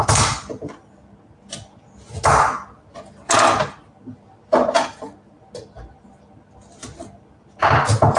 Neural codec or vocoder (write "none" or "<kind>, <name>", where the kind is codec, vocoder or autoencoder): none